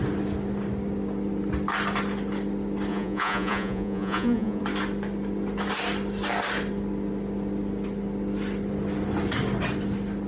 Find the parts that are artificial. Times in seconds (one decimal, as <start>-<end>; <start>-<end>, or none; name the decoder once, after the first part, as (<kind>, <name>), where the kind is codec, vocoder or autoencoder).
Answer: 2.9-4.6 (vocoder, Vocos)